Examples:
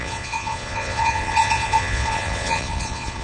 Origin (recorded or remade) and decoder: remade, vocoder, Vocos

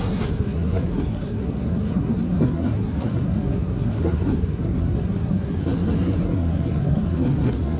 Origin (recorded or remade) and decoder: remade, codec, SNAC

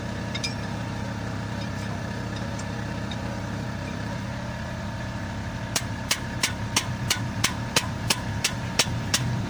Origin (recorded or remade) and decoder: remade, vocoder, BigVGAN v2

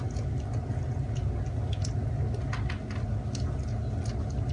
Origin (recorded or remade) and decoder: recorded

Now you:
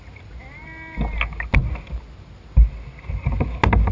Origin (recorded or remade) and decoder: recorded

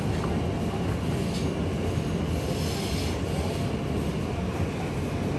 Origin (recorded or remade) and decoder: recorded